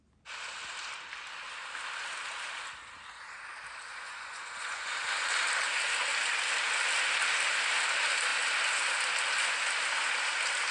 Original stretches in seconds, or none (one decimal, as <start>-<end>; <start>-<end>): 0.0-3.9; 4.9-10.7